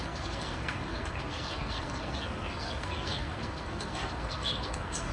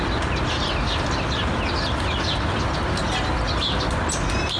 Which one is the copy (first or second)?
first